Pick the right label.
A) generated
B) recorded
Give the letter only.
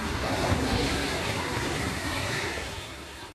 A